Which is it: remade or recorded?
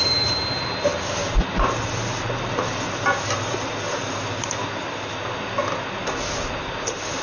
recorded